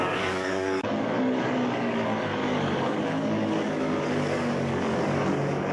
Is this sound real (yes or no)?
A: no